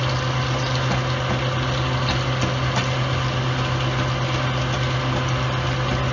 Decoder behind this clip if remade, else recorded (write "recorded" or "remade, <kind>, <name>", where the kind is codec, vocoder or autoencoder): recorded